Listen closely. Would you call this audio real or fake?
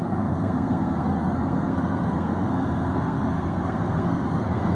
fake